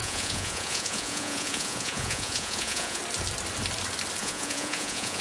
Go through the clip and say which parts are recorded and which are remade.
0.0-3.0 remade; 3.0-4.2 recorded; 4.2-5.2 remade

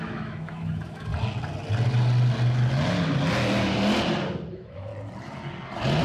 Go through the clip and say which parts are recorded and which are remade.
0.0-1.1 remade; 1.1-4.5 recorded; 4.5-4.9 remade; 4.9-6.0 recorded